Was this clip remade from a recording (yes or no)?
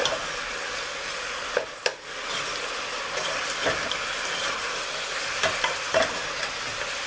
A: no